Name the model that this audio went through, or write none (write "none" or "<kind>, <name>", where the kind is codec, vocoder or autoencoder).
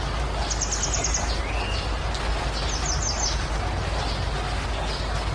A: none